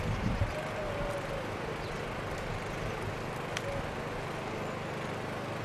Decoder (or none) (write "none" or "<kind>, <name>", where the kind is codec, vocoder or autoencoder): none